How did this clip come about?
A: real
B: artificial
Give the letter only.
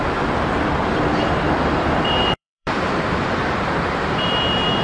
B